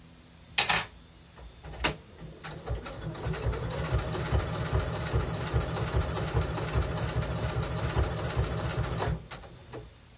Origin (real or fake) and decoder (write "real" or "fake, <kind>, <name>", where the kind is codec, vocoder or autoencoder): real